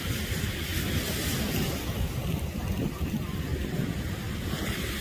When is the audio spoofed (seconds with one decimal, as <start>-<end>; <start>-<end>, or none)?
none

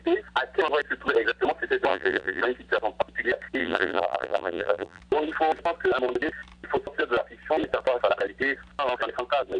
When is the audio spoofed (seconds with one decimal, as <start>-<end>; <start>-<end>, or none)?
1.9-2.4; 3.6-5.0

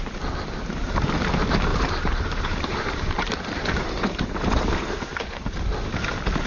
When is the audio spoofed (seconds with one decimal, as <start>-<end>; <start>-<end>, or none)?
1.7-5.6

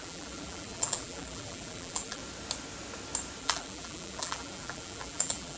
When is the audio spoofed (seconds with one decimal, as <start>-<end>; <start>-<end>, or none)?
0.0-2.2; 3.4-5.6

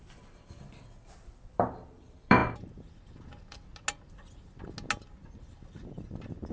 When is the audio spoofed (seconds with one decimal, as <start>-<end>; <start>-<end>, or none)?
0.0-2.4

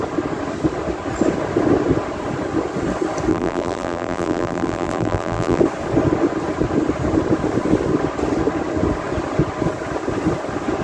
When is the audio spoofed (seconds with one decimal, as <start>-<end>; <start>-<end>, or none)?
3.3-5.6